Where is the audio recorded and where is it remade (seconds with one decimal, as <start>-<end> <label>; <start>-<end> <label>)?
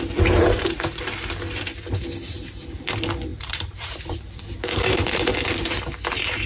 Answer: 0.0-0.4 recorded; 0.4-1.0 remade; 1.0-3.3 recorded; 3.3-5.3 remade; 5.3-6.5 recorded